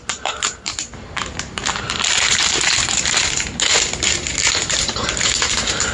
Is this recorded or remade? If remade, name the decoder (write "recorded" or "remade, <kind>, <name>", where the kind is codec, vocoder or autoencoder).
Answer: remade, vocoder, BigVGAN v2